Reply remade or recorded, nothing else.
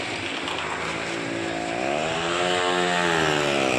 recorded